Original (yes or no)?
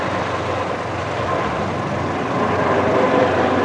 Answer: yes